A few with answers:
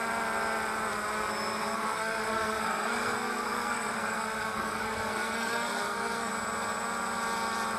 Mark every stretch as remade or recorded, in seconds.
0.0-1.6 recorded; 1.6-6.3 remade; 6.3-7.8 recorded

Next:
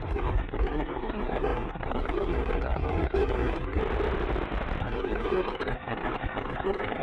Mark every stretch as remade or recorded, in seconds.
0.0-3.8 remade; 3.8-4.8 recorded; 4.8-7.0 remade

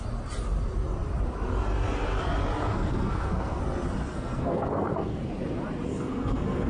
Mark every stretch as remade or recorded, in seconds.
0.0-2.7 recorded; 2.7-3.6 remade; 3.6-4.1 recorded; 4.1-5.2 remade; 5.2-5.9 recorded; 5.9-6.7 remade

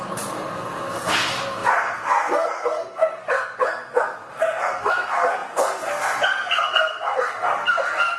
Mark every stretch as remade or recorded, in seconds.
0.0-8.2 remade

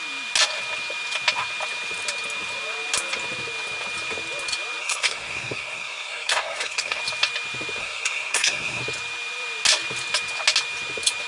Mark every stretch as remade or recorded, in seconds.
0.0-4.8 recorded; 4.8-7.0 remade; 7.0-7.8 recorded; 7.8-8.8 remade; 8.8-11.3 recorded